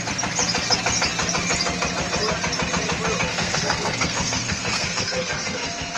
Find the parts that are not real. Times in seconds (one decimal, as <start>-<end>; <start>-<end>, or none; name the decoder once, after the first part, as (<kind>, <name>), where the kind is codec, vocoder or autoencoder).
3.3-6.0 (codec, SNAC)